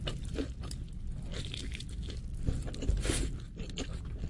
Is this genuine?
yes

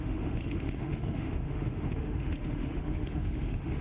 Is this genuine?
no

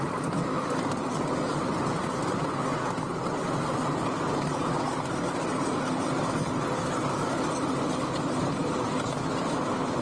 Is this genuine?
yes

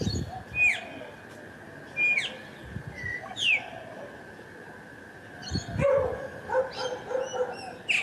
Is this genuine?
yes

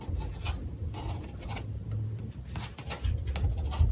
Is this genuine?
yes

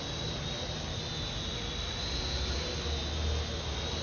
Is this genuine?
yes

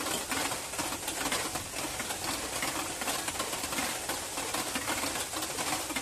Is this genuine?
yes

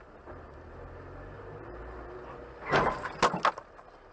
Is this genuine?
yes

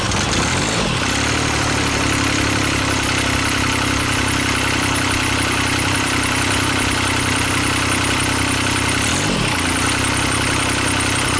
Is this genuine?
yes